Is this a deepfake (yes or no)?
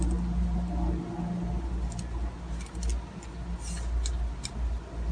no